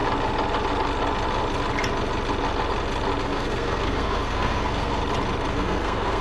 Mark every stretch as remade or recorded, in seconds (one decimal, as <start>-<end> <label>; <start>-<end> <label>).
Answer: 0.0-3.2 recorded; 3.2-5.0 remade; 5.0-5.5 recorded; 5.5-6.2 remade